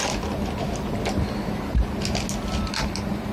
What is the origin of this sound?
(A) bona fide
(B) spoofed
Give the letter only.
A